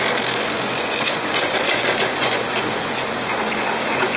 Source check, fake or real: fake